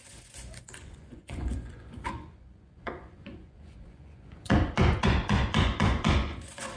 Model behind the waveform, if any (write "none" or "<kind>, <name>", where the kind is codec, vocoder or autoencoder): vocoder, Vocos